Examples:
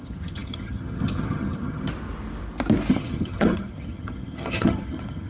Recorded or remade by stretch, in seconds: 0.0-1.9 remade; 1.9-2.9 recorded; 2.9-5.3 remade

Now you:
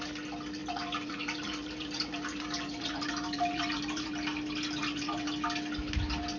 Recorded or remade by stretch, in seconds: 0.0-0.6 recorded; 0.6-4.1 remade; 4.1-4.8 recorded; 4.8-5.3 remade; 5.3-6.4 recorded

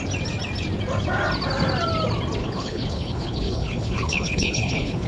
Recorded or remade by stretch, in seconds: 0.0-2.4 recorded; 2.4-5.1 remade

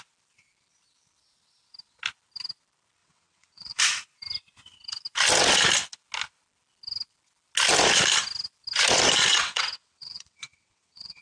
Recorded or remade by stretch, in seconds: 0.0-3.0 recorded; 3.0-3.8 remade; 3.8-9.3 recorded; 9.3-11.2 remade

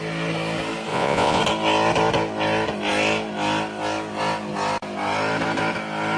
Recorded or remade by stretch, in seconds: 0.0-0.9 recorded; 0.9-1.4 remade; 1.4-6.2 recorded

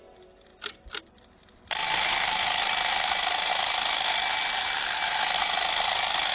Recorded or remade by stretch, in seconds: 0.0-6.3 recorded

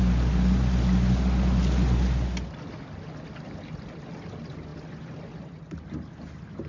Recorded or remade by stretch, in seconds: 0.0-6.7 recorded

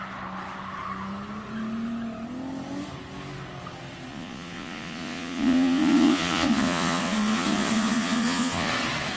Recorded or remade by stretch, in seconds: 0.0-4.1 recorded; 4.1-8.7 remade; 8.7-9.2 recorded